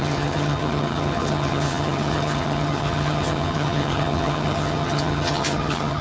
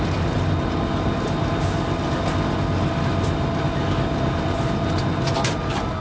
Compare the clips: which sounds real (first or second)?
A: second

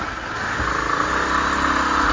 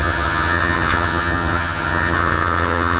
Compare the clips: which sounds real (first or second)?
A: first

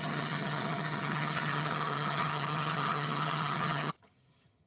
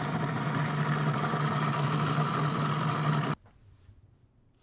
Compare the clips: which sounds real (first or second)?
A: second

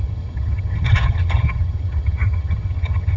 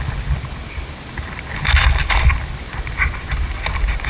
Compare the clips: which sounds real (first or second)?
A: second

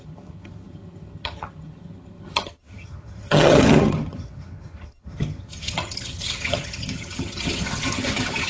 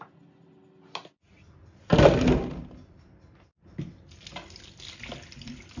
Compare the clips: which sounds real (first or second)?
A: second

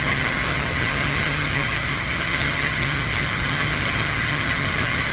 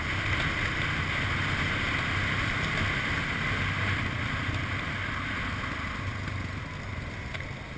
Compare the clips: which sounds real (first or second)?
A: second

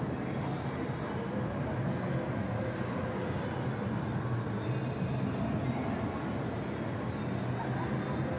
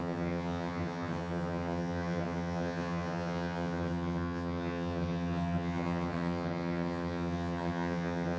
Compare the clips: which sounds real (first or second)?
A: first